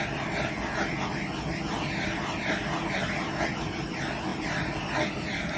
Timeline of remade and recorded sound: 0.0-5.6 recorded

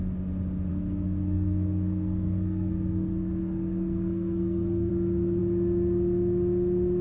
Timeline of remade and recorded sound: 0.0-0.7 recorded; 0.7-4.9 remade; 4.9-7.0 recorded

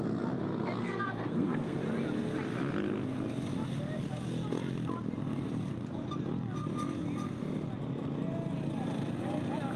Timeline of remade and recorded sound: 0.0-0.8 recorded; 0.8-1.8 remade; 1.8-9.8 recorded

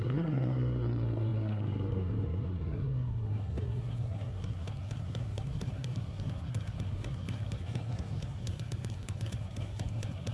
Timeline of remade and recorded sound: 0.0-10.3 remade